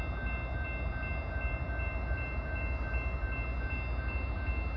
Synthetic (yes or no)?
no